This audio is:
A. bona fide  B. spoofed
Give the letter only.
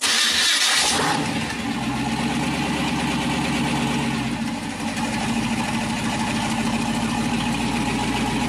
A